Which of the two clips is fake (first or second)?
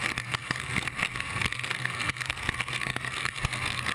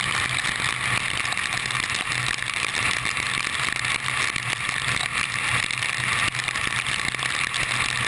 first